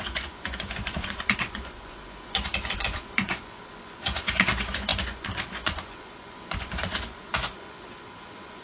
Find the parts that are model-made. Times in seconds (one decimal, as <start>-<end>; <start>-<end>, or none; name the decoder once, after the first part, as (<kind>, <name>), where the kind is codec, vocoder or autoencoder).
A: 0.0-8.6 (vocoder, Vocos)